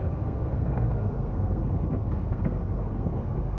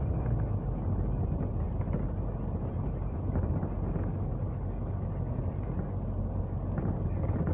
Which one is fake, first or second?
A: first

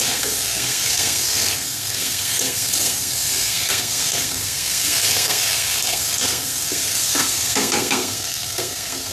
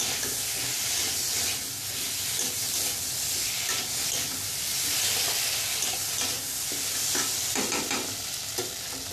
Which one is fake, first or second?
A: first